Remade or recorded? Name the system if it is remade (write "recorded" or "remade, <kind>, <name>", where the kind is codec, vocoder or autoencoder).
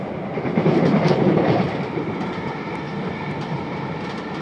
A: remade, vocoder, BigVGAN v2